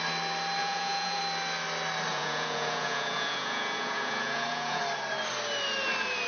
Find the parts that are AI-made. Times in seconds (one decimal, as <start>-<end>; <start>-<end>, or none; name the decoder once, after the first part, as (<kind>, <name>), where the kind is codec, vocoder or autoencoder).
0.6-1.2 (vocoder, Vocos); 2.1-4.8